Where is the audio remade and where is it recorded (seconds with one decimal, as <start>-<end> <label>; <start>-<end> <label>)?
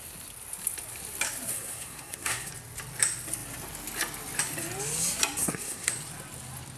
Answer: 0.0-1.5 recorded; 1.5-2.5 remade; 2.5-5.4 recorded; 5.4-5.9 remade; 5.9-6.8 recorded